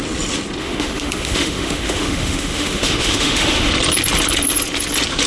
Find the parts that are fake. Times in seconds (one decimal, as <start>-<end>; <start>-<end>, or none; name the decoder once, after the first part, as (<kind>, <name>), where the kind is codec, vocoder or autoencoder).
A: 0.6-3.7 (autoencoder, DAC-VAE)